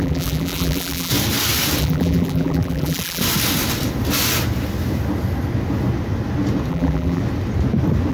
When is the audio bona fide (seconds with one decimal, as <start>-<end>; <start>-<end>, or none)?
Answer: 1.1-1.8; 3.2-6.7; 7.2-8.1